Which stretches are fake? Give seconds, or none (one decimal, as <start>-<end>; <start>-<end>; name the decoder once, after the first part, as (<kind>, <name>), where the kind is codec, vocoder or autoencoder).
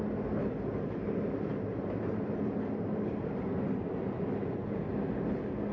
none